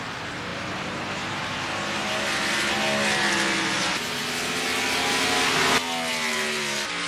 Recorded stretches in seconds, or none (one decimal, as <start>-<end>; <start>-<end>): 0.0-0.5; 2.2-6.3